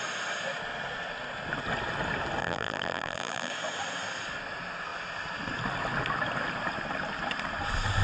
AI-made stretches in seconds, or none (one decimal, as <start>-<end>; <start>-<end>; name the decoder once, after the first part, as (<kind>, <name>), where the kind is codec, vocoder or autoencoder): 2.4-3.5 (vocoder, BigVGAN v2)